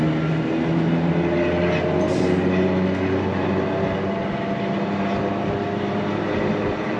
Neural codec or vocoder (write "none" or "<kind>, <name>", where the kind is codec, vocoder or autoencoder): none